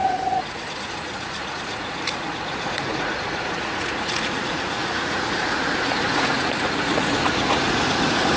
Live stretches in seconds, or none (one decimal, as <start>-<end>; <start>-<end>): none